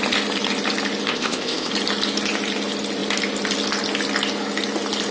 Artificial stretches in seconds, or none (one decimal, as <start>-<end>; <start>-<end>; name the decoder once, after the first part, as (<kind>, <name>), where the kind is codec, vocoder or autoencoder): 1.1-1.7 (codec, ZipCodec)